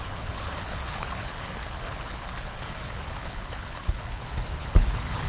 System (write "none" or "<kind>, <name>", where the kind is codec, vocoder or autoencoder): codec, HILCodec